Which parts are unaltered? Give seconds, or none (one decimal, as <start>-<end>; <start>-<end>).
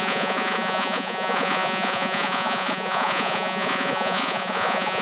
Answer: none